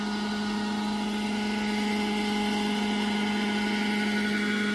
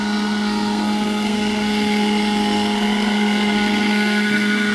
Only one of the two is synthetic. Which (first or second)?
second